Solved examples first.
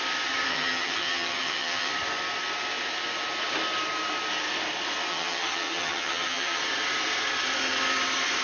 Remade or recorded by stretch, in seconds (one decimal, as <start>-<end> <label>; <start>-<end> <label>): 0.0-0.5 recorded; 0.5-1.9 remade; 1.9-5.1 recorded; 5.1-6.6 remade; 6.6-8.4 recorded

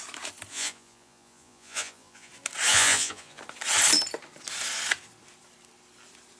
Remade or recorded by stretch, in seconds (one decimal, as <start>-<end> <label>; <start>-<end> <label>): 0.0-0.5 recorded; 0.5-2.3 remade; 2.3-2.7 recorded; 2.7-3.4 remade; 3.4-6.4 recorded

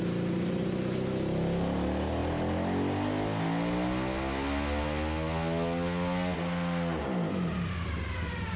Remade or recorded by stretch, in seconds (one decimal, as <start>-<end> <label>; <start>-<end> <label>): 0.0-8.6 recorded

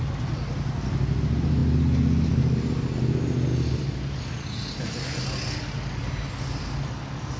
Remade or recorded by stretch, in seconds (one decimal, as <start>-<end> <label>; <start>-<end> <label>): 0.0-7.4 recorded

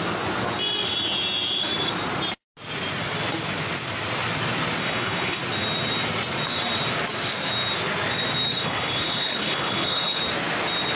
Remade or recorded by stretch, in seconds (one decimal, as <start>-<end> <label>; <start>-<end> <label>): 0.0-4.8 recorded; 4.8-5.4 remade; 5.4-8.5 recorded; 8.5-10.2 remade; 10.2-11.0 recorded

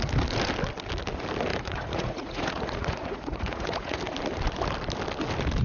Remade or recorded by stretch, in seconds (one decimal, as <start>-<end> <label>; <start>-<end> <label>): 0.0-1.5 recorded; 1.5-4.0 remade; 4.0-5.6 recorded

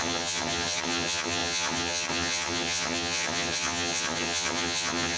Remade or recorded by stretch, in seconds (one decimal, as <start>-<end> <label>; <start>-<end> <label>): 0.0-5.2 remade

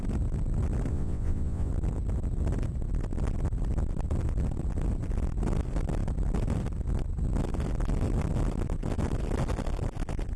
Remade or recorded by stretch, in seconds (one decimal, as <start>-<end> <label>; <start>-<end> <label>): 0.0-0.9 recorded; 0.9-1.7 remade; 1.7-10.4 recorded